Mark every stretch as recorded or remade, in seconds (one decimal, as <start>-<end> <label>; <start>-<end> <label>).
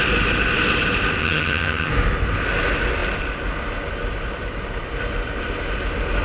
0.0-1.2 recorded; 1.2-1.9 remade; 1.9-6.2 recorded